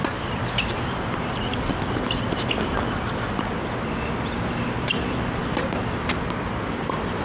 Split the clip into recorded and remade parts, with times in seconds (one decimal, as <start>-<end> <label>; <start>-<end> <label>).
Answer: 0.0-7.2 recorded